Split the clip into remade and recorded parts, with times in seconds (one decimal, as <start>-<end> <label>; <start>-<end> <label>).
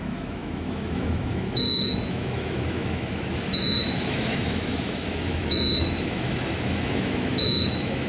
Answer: 0.0-8.1 remade